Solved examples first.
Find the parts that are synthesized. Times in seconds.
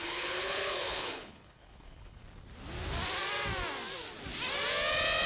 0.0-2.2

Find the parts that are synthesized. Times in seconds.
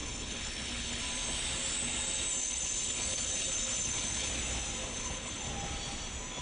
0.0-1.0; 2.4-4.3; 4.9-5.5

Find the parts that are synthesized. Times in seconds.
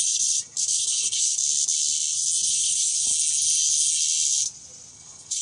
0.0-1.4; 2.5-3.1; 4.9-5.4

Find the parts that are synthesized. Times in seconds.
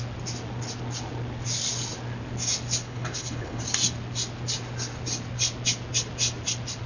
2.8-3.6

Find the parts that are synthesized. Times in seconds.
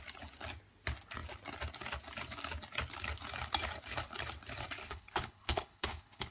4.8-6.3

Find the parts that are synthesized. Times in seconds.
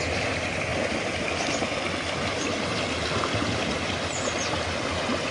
none